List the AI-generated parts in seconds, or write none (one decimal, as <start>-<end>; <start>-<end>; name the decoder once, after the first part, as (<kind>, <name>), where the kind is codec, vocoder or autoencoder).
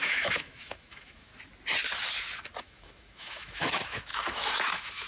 0.0-1.3 (autoencoder, DAC-VAE); 2.6-5.1